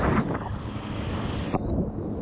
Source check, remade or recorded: recorded